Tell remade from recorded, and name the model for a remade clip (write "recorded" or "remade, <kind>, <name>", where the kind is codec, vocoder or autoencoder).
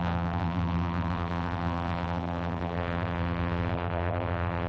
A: remade, vocoder, BigVGAN v2